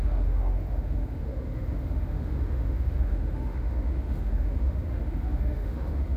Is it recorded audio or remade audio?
remade